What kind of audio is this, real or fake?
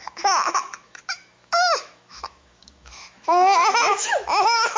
fake